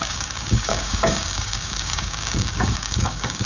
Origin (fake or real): fake